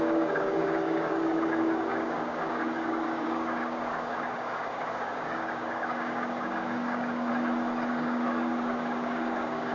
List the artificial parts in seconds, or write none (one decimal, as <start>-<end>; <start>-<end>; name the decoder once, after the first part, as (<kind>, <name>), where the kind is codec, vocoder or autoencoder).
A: 0.0-7.3 (codec, DAC); 7.9-9.7